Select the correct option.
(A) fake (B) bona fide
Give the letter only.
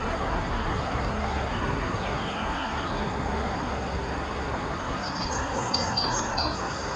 A